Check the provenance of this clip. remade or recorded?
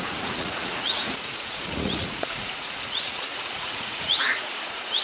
remade